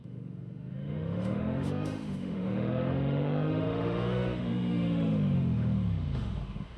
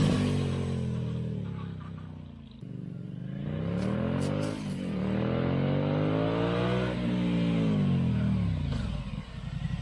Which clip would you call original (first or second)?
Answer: second